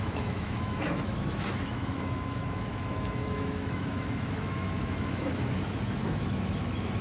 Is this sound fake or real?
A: fake